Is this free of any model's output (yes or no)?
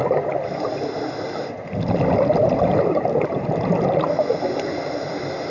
yes